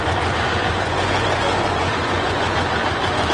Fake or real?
fake